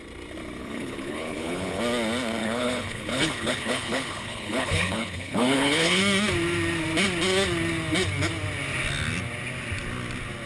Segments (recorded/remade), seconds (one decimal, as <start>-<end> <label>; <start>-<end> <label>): 0.0-0.6 recorded; 0.6-1.8 remade; 1.8-2.4 recorded; 2.4-6.0 remade; 6.0-10.5 recorded